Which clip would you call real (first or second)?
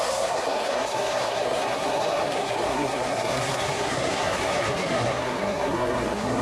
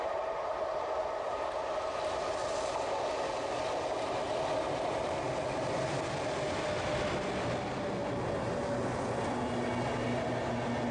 second